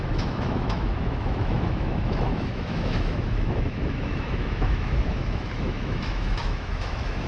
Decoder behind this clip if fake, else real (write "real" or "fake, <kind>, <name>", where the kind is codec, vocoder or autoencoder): fake, autoencoder, DAC-VAE